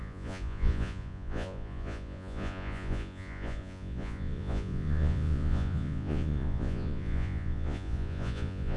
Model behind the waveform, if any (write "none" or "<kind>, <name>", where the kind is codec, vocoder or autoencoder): vocoder, Vocos